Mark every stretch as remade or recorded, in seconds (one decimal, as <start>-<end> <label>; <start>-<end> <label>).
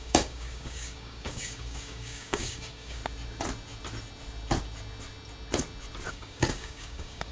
0.0-3.0 remade; 3.0-6.1 recorded; 6.1-7.3 remade